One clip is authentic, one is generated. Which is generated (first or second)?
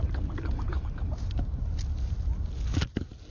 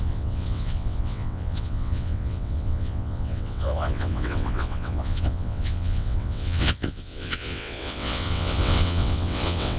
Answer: second